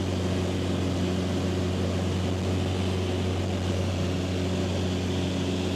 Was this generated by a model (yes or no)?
no